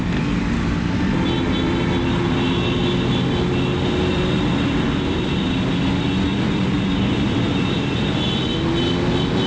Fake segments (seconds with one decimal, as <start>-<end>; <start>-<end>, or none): 6.3-8.1

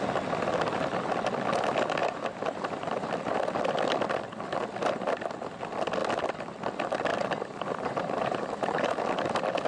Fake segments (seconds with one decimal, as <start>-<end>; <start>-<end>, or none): 2.0-3.1; 7.1-9.0